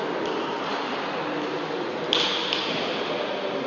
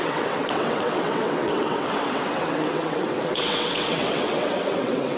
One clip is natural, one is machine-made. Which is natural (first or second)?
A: first